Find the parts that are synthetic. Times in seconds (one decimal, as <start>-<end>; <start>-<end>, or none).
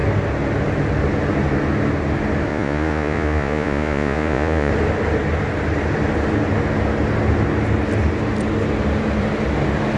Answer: 2.5-4.7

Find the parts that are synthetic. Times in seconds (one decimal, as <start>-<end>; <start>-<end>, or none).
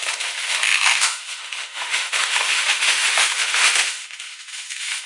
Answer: 0.0-5.1